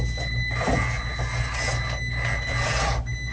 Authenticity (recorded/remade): recorded